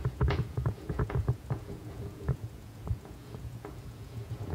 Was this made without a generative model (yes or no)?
no